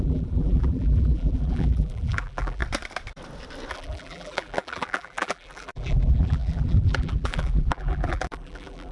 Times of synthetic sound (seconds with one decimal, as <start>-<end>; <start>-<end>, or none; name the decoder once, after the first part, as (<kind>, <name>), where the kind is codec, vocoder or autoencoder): 0.0-2.6 (vocoder, BigVGAN v2); 3.7-8.9